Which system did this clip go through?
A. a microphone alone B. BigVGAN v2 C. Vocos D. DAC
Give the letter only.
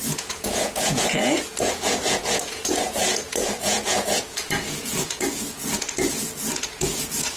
C